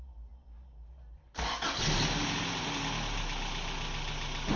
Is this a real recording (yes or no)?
yes